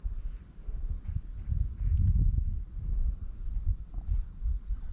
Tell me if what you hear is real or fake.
real